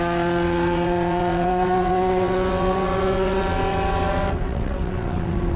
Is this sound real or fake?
fake